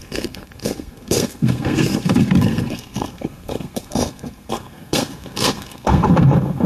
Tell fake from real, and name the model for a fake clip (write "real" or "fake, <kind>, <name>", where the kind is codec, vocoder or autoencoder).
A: fake, codec, SNAC